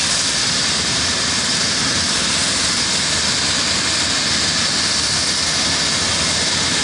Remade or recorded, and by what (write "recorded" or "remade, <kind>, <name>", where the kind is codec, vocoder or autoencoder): recorded